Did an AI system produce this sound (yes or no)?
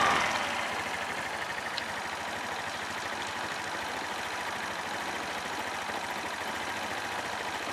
no